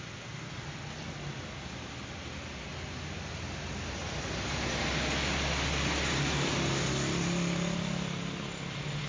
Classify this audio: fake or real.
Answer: real